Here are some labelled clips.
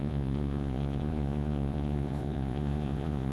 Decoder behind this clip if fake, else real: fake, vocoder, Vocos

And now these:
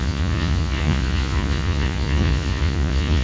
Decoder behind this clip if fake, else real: fake, vocoder, Vocos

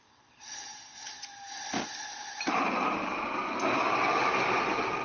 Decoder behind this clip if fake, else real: real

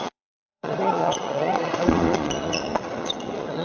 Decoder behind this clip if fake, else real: fake, vocoder, Vocos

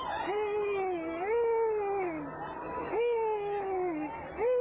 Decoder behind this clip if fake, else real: real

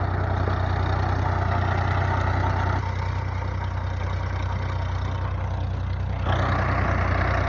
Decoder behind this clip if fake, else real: real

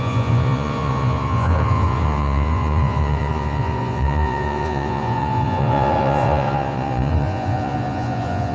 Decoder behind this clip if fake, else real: fake, vocoder, Vocos